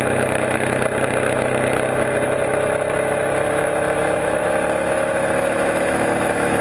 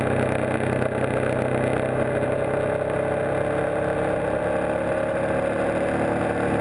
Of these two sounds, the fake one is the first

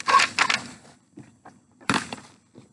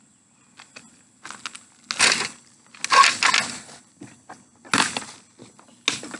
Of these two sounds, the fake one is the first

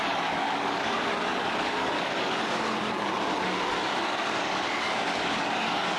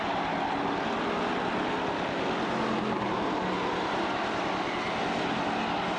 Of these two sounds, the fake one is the first